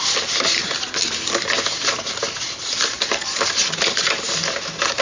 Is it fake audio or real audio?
real